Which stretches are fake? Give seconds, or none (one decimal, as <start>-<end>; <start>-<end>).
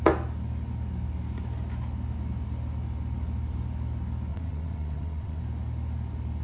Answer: 4.3-5.4